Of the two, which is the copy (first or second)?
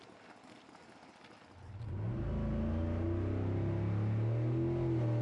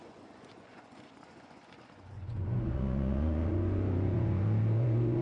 second